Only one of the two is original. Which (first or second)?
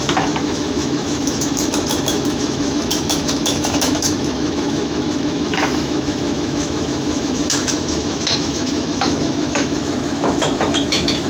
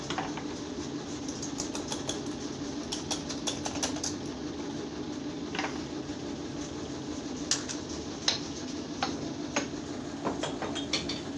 second